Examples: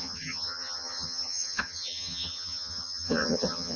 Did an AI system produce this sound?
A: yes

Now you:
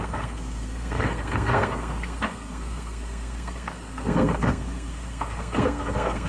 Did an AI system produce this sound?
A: yes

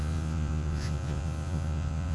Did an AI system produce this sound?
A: yes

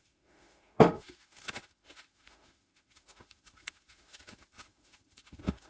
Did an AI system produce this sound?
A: yes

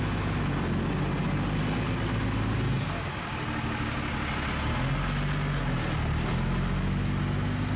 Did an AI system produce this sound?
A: no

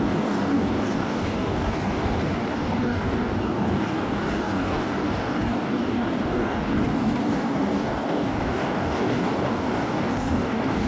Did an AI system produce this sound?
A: yes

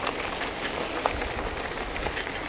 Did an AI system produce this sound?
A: no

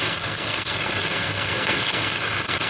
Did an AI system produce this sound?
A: yes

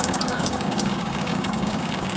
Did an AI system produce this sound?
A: yes